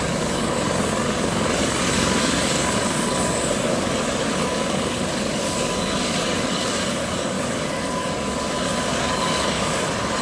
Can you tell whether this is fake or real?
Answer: fake